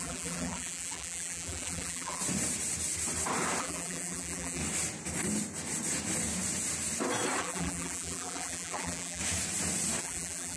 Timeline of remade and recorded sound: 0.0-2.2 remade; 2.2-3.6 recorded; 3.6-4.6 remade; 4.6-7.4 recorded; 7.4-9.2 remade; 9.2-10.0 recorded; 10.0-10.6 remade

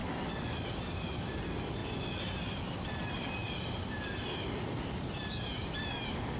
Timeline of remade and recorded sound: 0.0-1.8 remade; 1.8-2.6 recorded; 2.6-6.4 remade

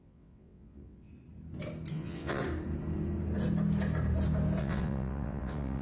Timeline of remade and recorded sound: 0.0-1.1 remade; 1.1-1.9 recorded; 1.9-2.4 remade; 2.4-4.6 recorded; 4.6-5.8 remade